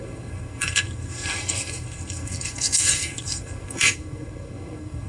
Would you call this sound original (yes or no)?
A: no